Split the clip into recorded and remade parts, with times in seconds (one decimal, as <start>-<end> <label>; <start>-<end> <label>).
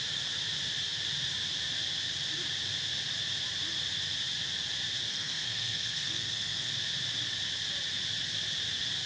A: 0.0-5.1 recorded; 5.1-6.7 remade; 6.7-9.1 recorded